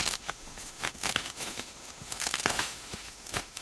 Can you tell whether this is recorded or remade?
remade